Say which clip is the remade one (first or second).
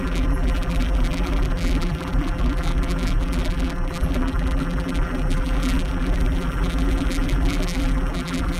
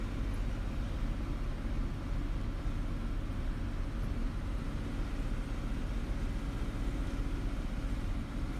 first